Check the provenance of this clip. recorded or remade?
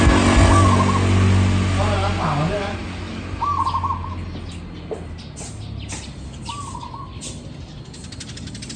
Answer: recorded